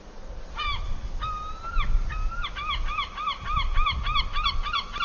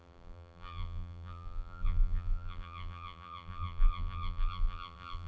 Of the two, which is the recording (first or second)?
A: first